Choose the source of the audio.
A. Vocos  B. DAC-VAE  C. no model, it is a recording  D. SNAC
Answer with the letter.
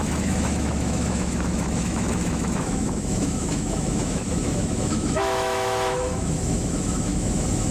B